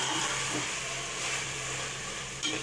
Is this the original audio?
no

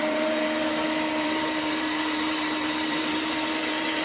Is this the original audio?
no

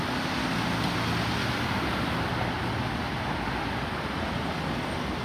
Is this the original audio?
yes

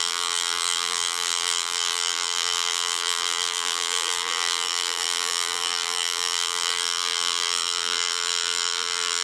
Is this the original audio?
no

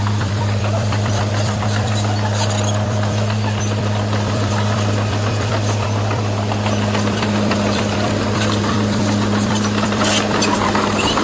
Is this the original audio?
no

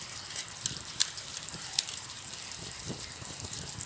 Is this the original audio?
no